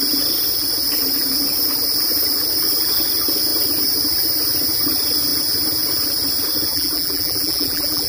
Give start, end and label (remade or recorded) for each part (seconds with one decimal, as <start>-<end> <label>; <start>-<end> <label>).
0.0-6.7 recorded; 6.7-8.1 remade